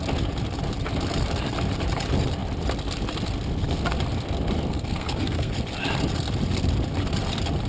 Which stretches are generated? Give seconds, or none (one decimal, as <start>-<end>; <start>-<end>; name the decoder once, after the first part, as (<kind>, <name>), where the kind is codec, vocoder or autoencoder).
4.7-5.5 (codec, SNAC)

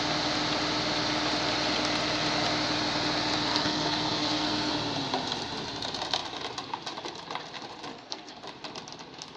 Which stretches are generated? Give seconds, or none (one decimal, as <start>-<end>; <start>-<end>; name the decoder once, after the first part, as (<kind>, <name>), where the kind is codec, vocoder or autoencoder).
3.5-4.7 (codec, SNAC); 7.9-8.4

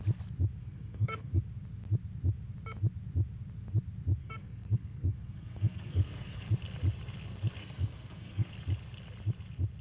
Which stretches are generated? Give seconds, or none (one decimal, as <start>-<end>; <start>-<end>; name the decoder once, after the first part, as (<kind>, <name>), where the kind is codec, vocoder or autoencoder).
0.6-1.4 (codec, SNAC); 4.2-6.5; 7.6-8.5

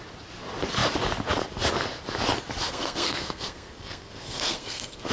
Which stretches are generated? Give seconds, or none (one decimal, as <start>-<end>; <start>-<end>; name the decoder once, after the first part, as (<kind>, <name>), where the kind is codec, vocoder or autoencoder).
2.6-5.1 (codec, SNAC)

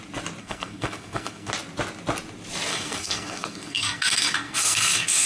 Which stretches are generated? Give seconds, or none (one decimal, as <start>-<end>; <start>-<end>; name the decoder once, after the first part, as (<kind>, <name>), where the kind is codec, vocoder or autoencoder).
0.4-1.5 (codec, SNAC); 2.7-5.3

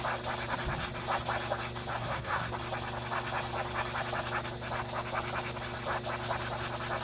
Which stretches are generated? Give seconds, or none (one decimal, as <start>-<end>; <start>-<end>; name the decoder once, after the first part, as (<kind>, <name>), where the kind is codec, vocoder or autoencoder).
1.9-2.5 (codec, SNAC)

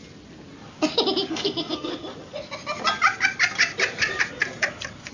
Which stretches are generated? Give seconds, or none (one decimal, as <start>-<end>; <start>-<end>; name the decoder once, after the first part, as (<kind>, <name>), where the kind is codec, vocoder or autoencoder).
1.3-1.9 (codec, SNAC)